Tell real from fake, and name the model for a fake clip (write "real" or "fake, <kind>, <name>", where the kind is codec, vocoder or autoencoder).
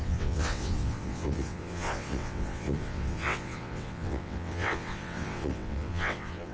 fake, vocoder, WaveNeXt